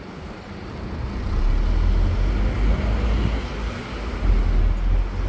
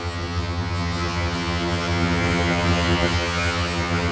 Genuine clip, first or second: first